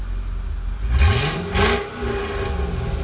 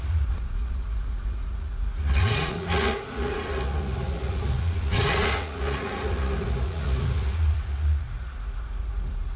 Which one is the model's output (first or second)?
second